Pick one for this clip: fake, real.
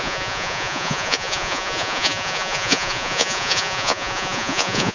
fake